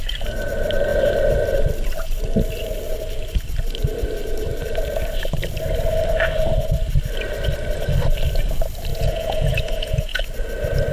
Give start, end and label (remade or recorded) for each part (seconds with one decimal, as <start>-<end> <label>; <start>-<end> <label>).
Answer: 0.0-8.9 recorded; 8.9-10.2 remade; 10.2-10.9 recorded